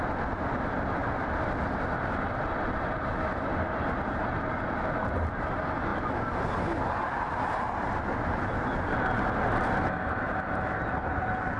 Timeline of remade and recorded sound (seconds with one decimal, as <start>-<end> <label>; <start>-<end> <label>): 0.0-11.6 recorded

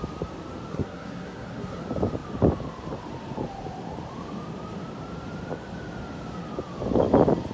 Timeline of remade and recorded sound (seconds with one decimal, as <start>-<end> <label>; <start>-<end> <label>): 0.0-0.7 recorded; 0.7-1.8 remade; 1.8-7.5 recorded

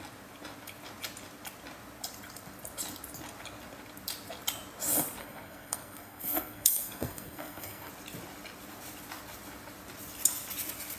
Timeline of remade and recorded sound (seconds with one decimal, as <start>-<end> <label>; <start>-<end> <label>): 0.0-5.2 recorded; 5.2-7.9 remade; 7.9-11.0 recorded

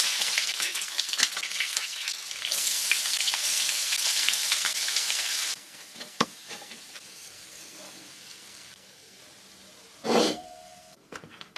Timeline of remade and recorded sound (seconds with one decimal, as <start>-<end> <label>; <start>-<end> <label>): 0.0-9.2 remade; 9.2-10.2 recorded; 10.2-11.6 remade

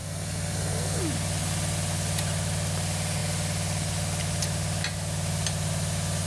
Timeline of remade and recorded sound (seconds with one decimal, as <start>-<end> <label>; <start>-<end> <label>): 0.0-1.0 remade; 1.0-6.3 recorded

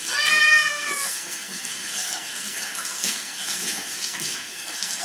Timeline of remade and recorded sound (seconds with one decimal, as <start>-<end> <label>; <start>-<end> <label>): 0.0-5.0 remade

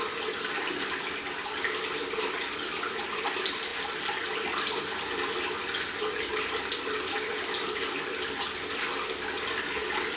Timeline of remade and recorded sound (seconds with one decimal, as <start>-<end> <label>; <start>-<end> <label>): 0.0-10.2 recorded